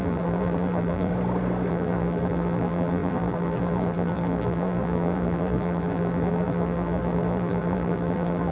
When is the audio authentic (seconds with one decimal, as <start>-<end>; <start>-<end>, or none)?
1.1-1.7